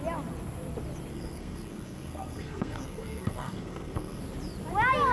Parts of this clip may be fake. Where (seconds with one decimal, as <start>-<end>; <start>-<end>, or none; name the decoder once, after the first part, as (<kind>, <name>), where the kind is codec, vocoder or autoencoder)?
1.1-4.2 (codec, SNAC)